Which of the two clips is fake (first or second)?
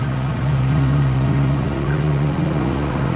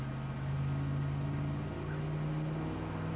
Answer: first